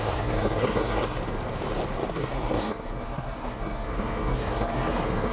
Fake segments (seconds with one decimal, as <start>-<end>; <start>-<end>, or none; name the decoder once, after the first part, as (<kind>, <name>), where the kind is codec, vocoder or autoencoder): 0.0-1.2 (codec, SNAC); 2.1-5.3